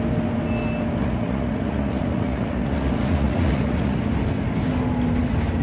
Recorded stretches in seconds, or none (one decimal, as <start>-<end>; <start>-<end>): 0.0-1.0; 4.0-5.6